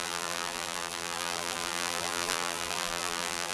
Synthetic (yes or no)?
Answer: yes